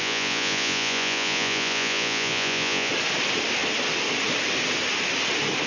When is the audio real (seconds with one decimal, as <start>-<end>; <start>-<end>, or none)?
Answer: 2.9-5.7